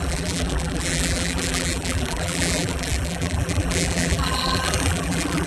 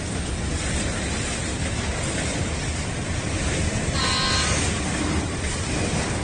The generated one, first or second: first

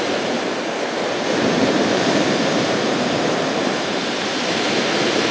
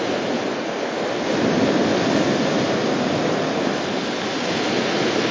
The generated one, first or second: first